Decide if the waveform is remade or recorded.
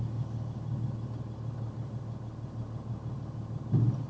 recorded